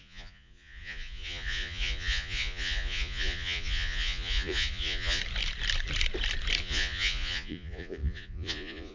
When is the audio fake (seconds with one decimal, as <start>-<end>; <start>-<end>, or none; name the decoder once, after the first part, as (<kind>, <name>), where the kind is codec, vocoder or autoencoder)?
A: 0.0-5.2 (vocoder, Vocos); 6.6-8.9

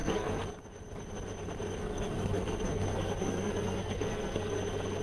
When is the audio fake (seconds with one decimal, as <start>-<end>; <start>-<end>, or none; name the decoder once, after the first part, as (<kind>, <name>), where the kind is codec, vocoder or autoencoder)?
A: 0.0-0.5 (codec, SNAC); 1.8-4.6

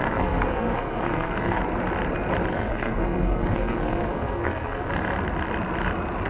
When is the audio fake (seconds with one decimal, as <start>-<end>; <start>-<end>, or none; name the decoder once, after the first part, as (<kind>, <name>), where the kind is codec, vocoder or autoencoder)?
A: 0.0-1.6 (codec, SNAC); 2.5-4.9

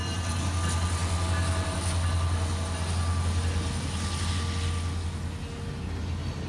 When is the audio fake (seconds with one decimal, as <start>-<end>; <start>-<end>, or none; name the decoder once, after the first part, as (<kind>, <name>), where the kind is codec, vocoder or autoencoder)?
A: none

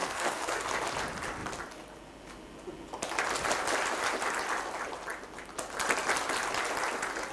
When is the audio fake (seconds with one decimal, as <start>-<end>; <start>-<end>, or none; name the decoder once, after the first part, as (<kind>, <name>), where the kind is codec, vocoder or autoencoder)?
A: 0.0-0.6 (codec, SNAC)

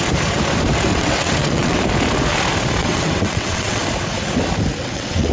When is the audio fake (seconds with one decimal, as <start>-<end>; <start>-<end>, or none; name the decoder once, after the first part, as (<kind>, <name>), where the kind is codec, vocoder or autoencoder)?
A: 0.9-1.8 (vocoder, WaveNeXt); 2.8-3.8; 4.8-5.3